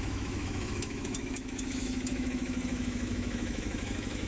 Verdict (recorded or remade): remade